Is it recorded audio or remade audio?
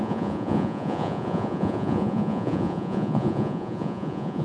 remade